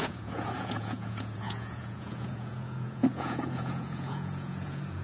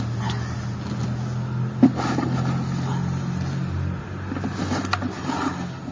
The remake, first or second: first